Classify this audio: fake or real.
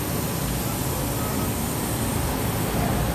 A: real